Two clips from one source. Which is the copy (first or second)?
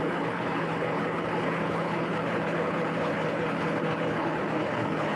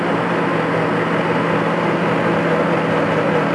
first